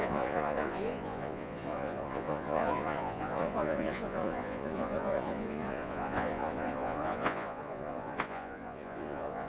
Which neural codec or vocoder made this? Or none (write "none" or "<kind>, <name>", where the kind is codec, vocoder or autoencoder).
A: vocoder, Vocos